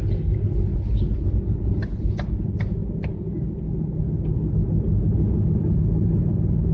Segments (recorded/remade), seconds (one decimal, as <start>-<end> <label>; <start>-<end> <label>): 0.0-6.7 recorded